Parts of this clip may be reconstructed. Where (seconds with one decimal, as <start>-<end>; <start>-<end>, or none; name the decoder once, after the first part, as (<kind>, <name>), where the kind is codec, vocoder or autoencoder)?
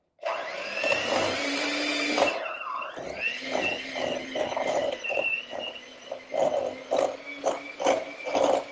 0.4-2.8 (vocoder, BigVGAN v2); 4.8-5.3